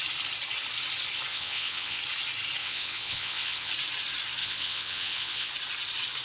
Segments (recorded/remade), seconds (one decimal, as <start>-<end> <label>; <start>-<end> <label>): 0.0-1.3 recorded; 1.3-2.0 remade; 2.0-2.6 recorded; 2.6-3.7 remade; 3.7-4.4 recorded; 4.4-5.5 remade; 5.5-6.2 recorded